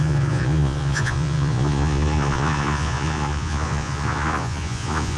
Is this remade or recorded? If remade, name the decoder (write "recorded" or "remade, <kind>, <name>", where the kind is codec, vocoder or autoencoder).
remade, vocoder, Vocos